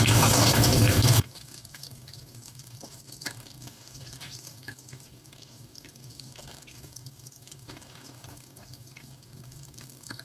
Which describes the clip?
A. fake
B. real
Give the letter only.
A